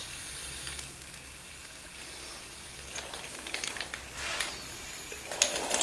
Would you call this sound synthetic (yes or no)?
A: no